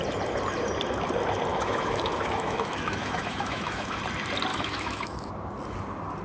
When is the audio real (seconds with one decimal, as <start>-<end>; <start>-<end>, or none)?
0.0-1.5; 4.0-4.5; 5.3-6.2